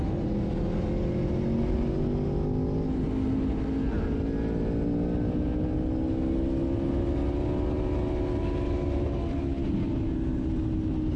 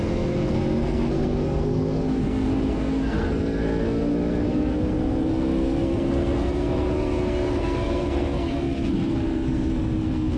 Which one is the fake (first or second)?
second